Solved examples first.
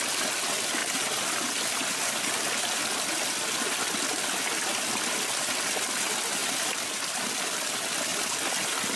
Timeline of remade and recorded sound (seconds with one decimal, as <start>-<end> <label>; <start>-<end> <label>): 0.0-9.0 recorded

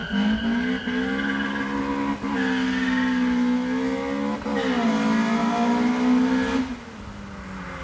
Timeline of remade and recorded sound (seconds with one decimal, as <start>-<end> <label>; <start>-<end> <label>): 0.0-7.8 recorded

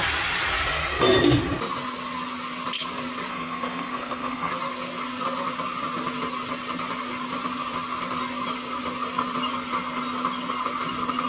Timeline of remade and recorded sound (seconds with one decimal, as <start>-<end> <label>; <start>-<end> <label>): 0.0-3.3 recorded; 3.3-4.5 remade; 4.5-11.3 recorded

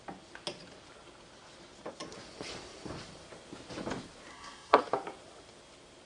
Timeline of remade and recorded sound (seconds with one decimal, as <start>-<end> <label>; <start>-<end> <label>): 0.0-4.3 recorded; 4.3-4.8 remade; 4.8-6.1 recorded

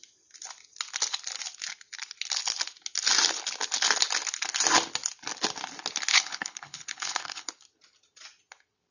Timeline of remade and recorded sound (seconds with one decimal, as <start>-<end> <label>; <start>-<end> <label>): 0.0-6.1 recorded; 6.1-7.5 remade; 7.5-8.9 recorded